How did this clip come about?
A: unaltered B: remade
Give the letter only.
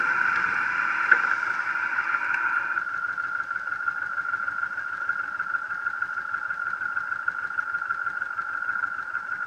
A